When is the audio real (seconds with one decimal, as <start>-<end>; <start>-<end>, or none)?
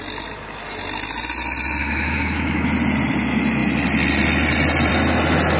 0.0-1.8; 2.7-5.6